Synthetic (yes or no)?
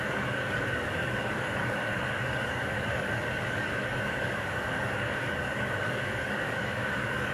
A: yes